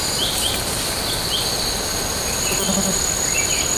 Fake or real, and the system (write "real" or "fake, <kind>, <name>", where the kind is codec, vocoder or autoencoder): real